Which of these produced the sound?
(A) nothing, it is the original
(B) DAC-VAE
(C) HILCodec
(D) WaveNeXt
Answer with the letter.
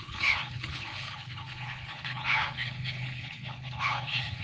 C